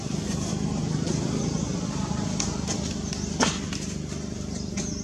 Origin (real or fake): fake